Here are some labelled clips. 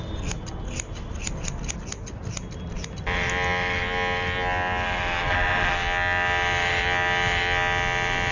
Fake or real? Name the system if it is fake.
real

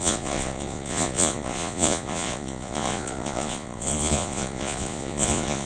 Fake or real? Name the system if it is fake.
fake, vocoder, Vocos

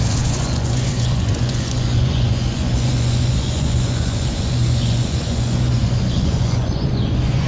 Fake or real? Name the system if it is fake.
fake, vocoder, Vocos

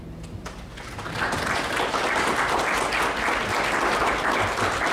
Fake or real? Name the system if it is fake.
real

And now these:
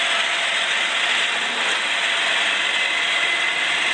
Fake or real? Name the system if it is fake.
real